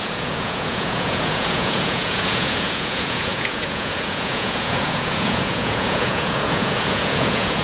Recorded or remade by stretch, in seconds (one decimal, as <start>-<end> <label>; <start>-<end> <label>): 0.0-7.6 remade